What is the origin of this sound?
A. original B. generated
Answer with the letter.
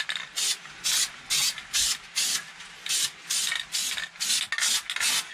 A